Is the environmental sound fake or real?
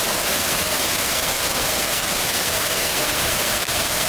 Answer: fake